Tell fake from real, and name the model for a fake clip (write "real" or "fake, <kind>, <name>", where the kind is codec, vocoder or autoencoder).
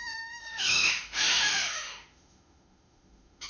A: fake, autoencoder, DAC-VAE